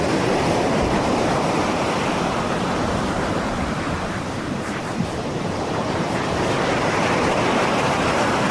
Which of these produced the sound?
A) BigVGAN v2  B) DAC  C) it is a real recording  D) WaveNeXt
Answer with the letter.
A